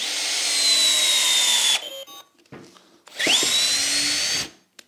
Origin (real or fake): real